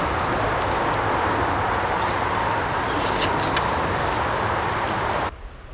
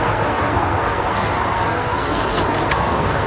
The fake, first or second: second